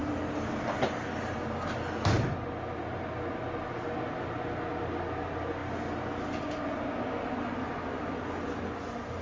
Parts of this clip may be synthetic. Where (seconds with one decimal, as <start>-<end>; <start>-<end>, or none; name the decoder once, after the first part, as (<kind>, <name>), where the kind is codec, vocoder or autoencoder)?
none